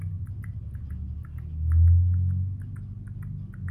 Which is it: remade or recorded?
recorded